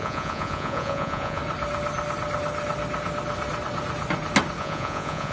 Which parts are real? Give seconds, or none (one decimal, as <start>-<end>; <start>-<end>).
1.4-4.6